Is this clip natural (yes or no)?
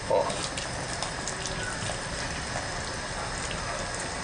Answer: yes